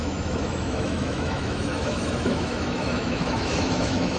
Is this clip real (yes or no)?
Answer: no